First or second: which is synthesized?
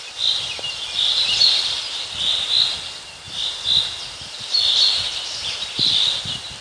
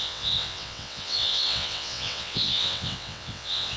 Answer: second